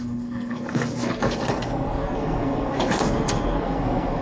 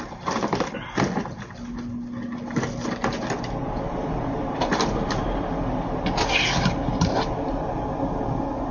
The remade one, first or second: first